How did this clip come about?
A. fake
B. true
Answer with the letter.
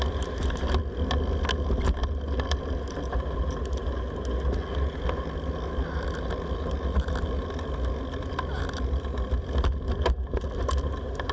B